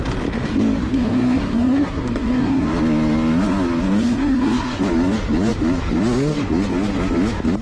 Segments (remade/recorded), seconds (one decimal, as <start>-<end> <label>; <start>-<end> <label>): 0.0-0.9 recorded; 0.9-2.7 remade; 2.7-4.0 recorded; 4.0-4.8 remade; 4.8-7.6 recorded